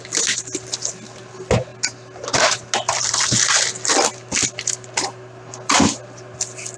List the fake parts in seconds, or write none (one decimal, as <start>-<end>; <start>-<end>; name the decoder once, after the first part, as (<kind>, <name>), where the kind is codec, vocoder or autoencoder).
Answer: none